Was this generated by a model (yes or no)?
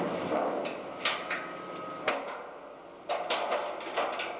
no